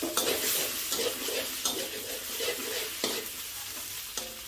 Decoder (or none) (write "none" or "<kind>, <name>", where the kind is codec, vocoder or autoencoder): none